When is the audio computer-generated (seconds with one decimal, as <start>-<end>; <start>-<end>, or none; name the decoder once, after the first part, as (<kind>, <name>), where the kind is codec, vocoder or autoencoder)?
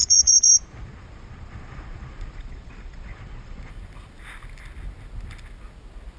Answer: 0.0-3.7 (vocoder, Vocos)